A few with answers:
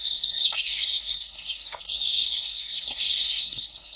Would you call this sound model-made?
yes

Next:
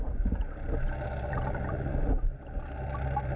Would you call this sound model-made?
no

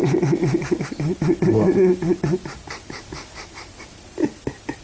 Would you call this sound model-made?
no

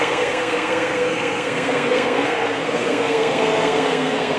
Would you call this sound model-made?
yes